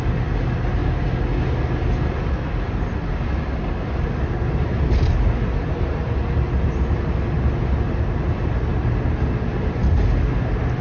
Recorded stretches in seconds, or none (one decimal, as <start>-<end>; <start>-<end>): 0.0-10.8